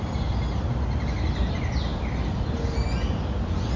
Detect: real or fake real